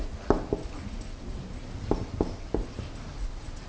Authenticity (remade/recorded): recorded